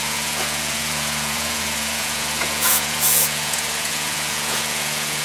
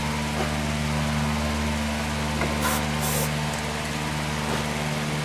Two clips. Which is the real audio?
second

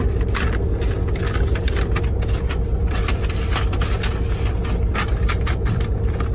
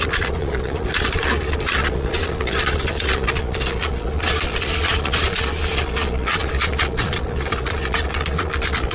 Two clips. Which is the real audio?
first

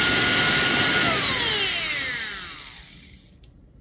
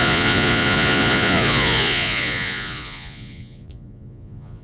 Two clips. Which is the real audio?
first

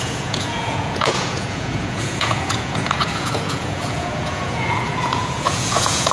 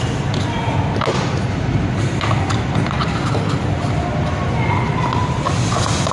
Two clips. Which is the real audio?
second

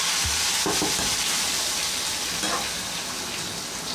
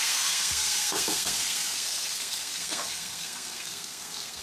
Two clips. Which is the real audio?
first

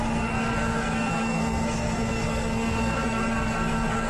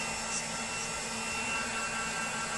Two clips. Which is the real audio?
second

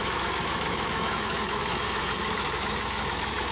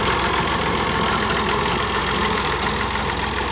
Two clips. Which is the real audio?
second